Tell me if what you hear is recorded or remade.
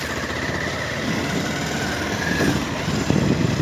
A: recorded